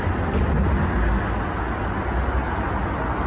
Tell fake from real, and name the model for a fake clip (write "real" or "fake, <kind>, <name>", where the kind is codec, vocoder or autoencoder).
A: real